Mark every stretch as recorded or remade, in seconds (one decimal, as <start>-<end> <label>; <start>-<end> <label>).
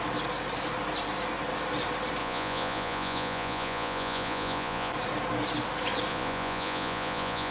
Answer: 0.0-2.2 recorded; 2.2-4.9 remade; 4.9-6.1 recorded; 6.1-7.5 remade